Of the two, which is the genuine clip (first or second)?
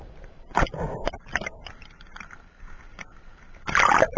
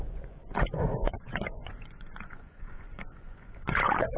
first